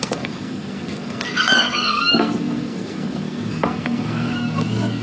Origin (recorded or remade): remade